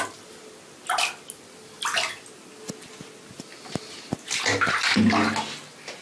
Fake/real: real